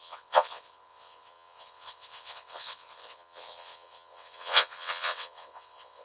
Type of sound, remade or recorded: remade